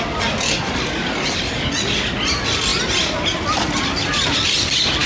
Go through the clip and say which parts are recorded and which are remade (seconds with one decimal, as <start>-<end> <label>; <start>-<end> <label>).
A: 0.0-5.1 recorded